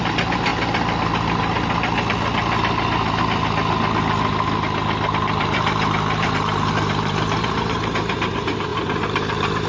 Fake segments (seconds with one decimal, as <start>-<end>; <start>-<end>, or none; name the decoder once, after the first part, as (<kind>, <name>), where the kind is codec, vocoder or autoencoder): 0.0-0.5 (vocoder, BigVGAN v2); 5.1-9.7